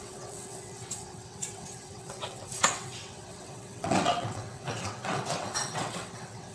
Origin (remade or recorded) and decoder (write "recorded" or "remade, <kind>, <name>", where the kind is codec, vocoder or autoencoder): remade, vocoder, WaveNeXt